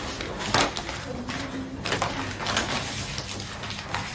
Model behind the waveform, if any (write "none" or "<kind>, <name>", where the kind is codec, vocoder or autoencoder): none